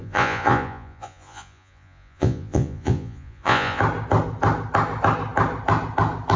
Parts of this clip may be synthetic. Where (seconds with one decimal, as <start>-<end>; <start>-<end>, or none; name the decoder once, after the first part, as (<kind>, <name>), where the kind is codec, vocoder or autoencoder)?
0.0-3.8 (vocoder, Vocos)

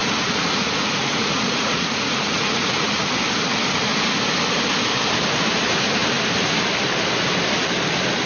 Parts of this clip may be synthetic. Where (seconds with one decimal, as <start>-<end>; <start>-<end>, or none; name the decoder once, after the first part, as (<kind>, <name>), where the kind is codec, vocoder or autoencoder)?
0.0-3.1 (vocoder, Vocos)

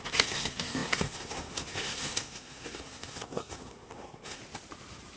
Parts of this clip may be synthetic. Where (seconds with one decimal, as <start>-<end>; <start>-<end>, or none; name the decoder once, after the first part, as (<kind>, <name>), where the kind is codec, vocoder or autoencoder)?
0.0-4.4 (codec, SNAC)

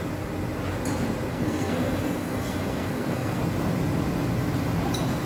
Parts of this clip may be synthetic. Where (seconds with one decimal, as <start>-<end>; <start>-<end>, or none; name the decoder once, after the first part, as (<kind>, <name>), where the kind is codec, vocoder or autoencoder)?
1.3-3.4 (codec, SNAC)

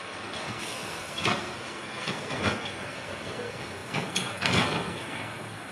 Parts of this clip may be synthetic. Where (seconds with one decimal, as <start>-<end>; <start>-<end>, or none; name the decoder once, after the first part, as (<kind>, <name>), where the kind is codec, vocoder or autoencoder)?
0.0-5.7 (codec, SNAC)

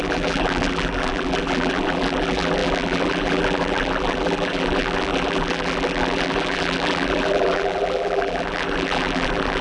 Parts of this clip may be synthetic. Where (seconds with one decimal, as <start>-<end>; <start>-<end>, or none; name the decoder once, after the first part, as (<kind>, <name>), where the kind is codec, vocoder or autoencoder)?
0.0-9.6 (vocoder, BigVGAN v2)

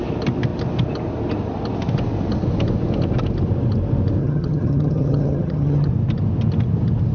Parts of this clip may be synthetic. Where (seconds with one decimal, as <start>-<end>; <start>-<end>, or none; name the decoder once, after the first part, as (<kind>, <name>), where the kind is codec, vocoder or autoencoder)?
4.2-5.9 (vocoder, HiFi-GAN)